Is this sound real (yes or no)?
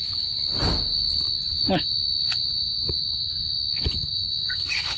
yes